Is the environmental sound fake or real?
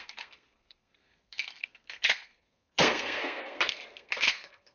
fake